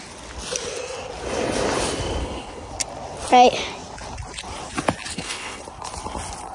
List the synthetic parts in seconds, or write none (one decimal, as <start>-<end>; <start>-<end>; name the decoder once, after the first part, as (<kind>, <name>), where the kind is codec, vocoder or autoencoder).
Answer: 2.2-2.7 (codec, HILCodec); 5.1-5.6